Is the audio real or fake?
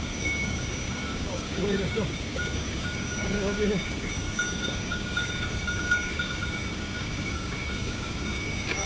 fake